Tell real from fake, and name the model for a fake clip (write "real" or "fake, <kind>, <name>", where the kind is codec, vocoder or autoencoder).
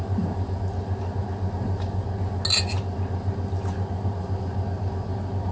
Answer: real